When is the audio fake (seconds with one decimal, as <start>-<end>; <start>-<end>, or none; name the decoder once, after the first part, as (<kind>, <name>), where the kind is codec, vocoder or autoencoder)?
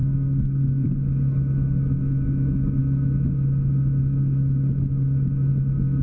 0.0-1.0 (codec, SNAC)